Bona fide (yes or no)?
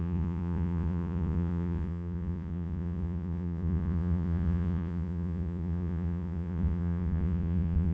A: no